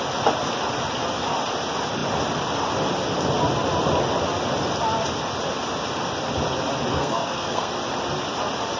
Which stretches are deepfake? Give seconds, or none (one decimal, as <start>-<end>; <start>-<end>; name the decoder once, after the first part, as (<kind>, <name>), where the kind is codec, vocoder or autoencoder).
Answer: 6.9-7.7 (codec, SNAC)